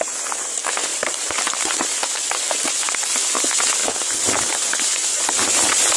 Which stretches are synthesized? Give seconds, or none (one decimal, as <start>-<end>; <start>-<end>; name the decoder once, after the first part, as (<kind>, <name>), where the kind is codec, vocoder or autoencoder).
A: 0.9-2.2 (vocoder, BigVGAN v2); 3.8-4.3

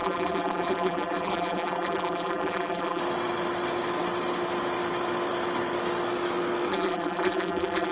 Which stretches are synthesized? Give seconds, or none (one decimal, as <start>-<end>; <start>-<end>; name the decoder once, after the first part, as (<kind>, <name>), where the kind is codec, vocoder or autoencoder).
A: 0.0-3.0 (vocoder, BigVGAN v2); 6.7-7.9

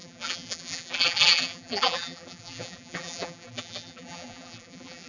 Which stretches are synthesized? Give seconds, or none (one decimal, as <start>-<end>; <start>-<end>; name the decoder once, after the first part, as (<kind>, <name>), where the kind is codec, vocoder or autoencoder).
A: 0.0-5.1 (vocoder, BigVGAN v2)

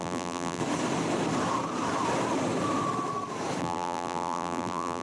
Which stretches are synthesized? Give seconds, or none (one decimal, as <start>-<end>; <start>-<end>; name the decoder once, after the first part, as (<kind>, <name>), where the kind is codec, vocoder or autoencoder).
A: 0.0-0.6 (vocoder, BigVGAN v2); 3.6-5.0

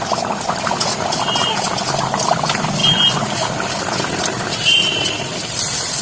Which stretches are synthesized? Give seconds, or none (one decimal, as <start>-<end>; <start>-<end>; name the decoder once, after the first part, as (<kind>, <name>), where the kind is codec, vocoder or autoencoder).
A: none

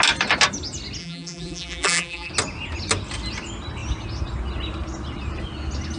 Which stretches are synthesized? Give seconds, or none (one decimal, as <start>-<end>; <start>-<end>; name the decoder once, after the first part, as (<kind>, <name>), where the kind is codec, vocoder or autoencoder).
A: 1.0-2.3 (vocoder, BigVGAN v2)